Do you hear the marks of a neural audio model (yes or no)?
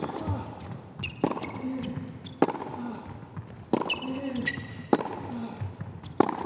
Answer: no